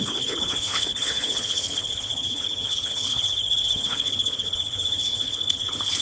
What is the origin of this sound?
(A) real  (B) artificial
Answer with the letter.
B